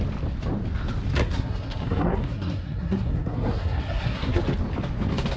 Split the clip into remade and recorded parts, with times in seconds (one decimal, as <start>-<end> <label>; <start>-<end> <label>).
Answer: 0.0-1.2 recorded; 1.2-4.4 remade; 4.4-5.4 recorded